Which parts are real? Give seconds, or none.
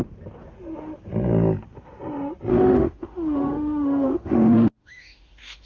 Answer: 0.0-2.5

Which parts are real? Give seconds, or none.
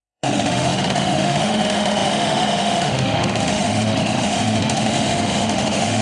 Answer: none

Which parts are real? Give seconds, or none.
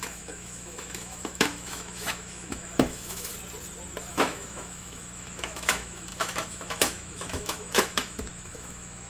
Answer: 3.3-4.1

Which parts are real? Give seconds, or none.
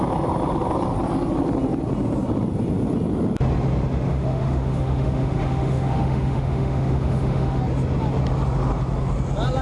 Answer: 0.0-4.1; 7.6-9.6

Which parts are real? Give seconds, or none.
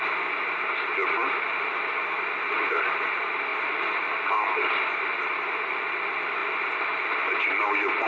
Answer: 0.0-8.1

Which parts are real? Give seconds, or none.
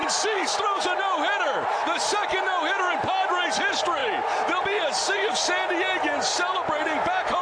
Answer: 0.0-7.4